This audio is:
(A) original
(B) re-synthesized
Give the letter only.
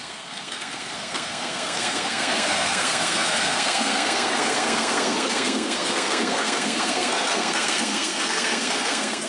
B